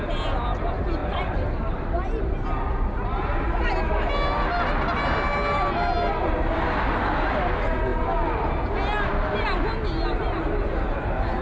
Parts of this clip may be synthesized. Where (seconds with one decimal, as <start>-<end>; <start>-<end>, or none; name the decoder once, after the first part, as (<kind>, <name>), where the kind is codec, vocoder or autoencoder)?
1.0-1.7 (vocoder, BigVGAN v2)